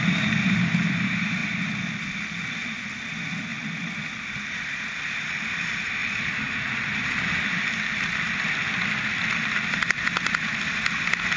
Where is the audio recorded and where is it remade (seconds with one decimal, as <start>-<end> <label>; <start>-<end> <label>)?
0.0-1.4 recorded; 1.4-2.9 remade; 2.9-3.5 recorded; 3.5-4.8 remade; 4.8-6.0 recorded; 6.0-11.0 remade; 11.0-11.4 recorded